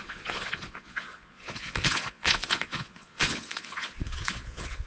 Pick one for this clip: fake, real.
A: fake